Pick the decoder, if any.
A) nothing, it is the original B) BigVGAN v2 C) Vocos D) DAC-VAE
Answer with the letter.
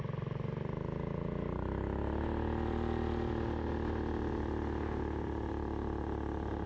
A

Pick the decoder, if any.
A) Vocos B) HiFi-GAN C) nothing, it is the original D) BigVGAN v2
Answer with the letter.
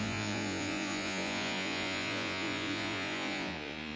A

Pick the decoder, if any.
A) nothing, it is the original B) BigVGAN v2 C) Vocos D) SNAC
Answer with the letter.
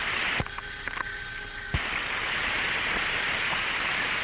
A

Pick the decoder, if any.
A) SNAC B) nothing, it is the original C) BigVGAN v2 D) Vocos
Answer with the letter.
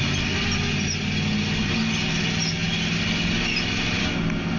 B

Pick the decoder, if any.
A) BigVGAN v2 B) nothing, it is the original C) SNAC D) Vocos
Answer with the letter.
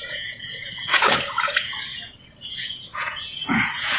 D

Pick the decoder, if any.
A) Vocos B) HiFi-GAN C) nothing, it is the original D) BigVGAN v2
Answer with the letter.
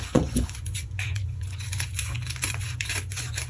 A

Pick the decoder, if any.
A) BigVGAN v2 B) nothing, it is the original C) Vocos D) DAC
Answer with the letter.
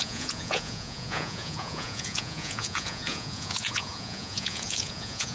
C